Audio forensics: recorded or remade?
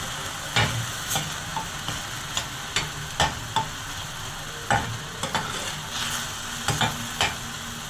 recorded